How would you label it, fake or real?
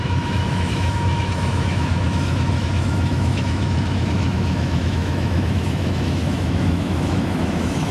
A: fake